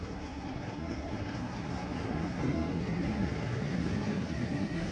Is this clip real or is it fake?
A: fake